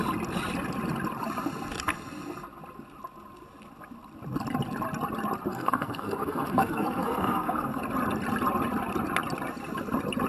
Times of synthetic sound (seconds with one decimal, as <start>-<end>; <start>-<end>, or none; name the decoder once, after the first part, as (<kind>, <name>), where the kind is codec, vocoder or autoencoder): 5.5-7.8 (codec, SNAC)